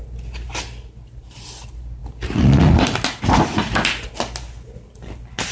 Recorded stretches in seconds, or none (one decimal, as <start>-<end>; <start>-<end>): 0.0-5.5